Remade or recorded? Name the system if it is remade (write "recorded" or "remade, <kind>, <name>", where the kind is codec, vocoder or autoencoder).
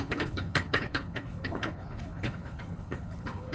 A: remade, codec, HILCodec